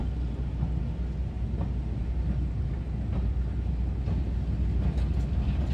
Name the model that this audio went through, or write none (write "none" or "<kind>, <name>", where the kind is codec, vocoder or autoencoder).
none